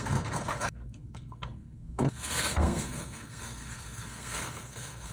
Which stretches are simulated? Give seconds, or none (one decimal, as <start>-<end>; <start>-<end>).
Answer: 0.0-5.1